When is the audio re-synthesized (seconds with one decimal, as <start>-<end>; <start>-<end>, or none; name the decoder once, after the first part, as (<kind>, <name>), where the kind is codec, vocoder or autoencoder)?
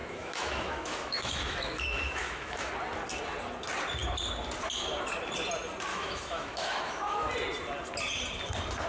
0.0-2.7 (autoencoder, DAC-VAE); 5.9-7.3